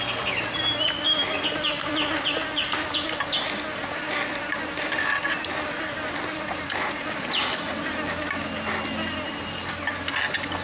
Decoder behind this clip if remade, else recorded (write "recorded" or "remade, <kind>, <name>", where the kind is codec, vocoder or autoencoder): recorded